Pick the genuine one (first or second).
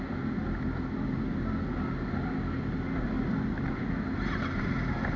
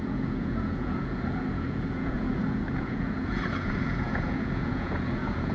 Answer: first